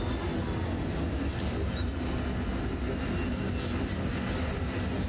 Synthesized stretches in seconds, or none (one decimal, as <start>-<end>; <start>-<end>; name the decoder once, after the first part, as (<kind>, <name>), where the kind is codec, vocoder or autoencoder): none